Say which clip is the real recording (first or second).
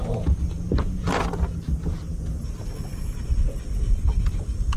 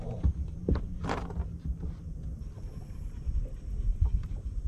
first